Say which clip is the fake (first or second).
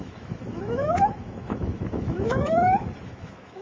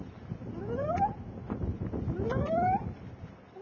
first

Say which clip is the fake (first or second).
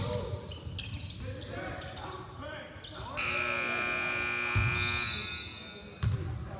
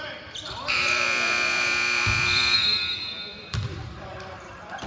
second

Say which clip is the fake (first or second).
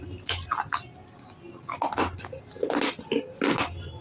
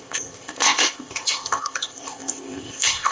second